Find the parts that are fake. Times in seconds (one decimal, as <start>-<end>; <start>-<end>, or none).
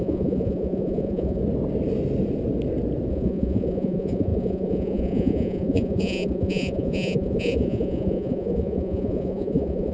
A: 0.0-1.4; 3.1-9.9